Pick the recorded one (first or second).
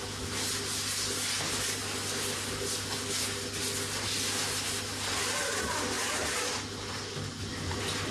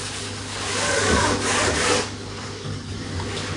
first